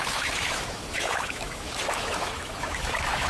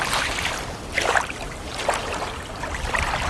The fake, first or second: first